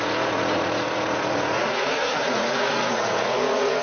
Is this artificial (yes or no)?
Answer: yes